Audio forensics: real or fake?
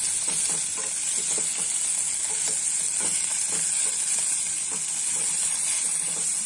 real